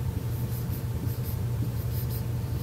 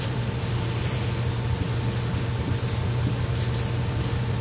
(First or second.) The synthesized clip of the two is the first